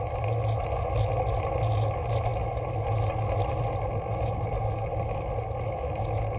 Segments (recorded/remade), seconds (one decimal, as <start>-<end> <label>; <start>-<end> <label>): 0.0-6.4 recorded